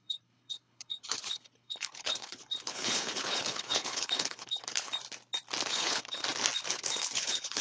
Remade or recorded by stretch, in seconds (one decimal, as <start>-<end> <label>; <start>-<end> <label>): 0.0-4.9 remade; 4.9-5.7 recorded; 5.7-6.2 remade; 6.2-6.7 recorded; 6.7-7.6 remade